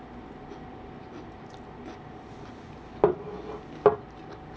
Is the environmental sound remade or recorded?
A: recorded